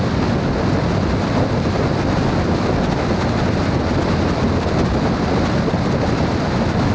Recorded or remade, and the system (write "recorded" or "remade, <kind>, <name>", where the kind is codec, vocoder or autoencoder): recorded